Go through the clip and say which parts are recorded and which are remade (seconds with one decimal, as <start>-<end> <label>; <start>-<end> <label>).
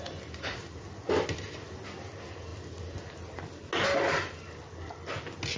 0.0-5.6 recorded